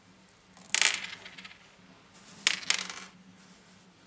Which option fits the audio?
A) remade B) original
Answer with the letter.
B